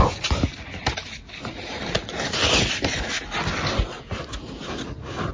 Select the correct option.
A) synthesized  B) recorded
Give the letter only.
B